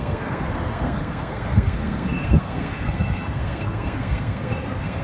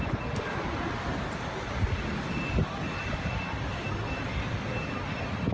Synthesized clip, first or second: first